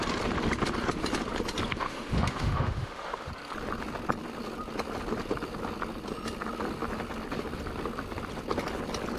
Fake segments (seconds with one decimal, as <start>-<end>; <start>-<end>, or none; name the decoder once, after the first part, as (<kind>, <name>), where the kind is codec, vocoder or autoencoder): 1.7-3.3 (autoencoder, DAC-VAE)

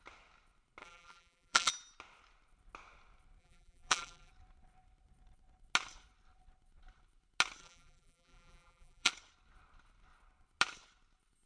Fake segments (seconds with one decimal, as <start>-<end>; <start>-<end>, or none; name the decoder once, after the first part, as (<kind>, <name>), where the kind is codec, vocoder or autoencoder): 0.8-1.7 (vocoder, BigVGAN v2); 3.4-4.3; 7.6-9.1

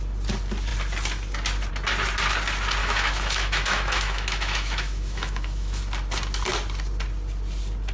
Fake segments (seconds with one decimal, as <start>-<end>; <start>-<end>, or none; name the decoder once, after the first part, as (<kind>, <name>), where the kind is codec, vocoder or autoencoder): 2.8-5.8 (autoencoder, DAC-VAE)

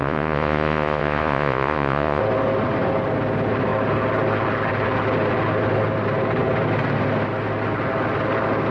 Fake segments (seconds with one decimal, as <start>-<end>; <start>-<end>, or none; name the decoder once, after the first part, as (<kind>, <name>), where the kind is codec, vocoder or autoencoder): 0.0-2.2 (vocoder, Vocos)

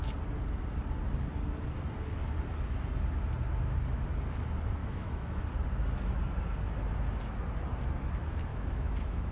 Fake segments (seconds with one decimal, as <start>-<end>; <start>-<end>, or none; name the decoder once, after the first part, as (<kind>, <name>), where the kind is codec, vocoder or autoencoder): 4.8-5.4 (autoencoder, DAC-VAE); 8.5-9.3

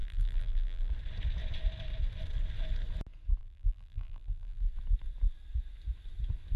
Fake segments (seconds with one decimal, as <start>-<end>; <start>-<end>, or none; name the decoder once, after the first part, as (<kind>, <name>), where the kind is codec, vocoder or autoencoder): 0.0-0.9 (vocoder, BigVGAN v2); 3.4-4.7

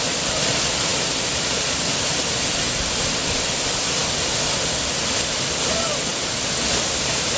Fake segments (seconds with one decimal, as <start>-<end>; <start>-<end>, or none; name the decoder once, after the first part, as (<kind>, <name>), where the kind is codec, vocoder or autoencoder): none

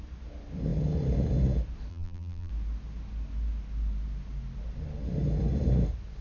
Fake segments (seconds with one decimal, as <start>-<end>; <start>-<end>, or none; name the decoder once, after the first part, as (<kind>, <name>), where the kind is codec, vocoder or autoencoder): 1.9-2.5 (vocoder, BigVGAN v2)